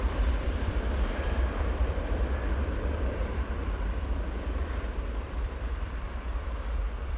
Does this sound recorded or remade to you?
remade